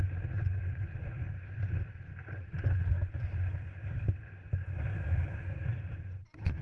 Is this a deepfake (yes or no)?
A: no